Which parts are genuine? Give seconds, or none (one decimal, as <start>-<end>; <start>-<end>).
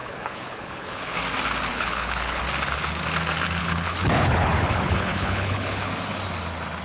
1.2-1.7; 2.4-3.6; 5.9-6.8